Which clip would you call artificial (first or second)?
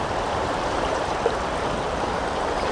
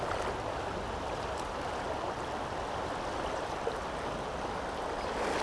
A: first